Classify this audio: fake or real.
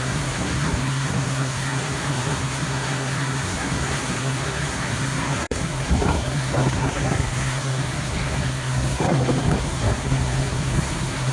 fake